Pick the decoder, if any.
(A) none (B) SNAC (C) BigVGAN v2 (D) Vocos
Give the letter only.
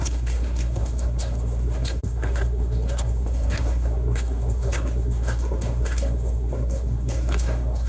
B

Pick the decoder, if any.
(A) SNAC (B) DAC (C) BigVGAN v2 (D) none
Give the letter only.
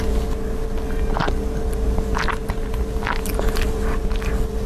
D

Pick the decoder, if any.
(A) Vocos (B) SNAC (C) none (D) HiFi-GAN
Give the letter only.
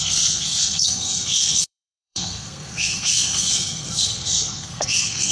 B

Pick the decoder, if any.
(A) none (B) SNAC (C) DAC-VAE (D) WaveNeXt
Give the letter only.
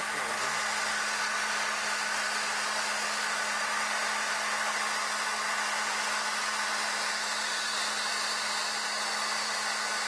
A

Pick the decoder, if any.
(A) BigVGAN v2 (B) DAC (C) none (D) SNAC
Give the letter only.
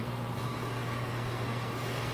D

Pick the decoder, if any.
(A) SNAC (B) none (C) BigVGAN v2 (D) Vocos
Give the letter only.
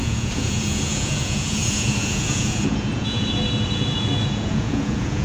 D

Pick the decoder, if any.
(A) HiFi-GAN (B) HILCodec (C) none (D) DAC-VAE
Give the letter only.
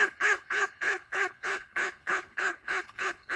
B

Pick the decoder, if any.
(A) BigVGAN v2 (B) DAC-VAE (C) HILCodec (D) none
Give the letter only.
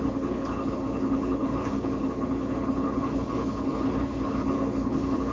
C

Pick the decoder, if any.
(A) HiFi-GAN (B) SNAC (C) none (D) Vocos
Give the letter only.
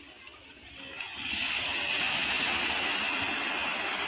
C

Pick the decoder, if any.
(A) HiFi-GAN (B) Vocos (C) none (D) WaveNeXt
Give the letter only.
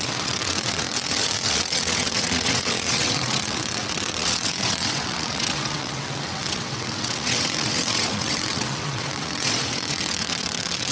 D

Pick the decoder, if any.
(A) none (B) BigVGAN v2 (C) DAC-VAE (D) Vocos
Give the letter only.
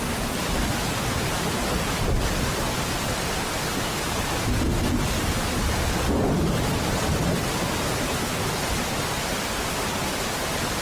A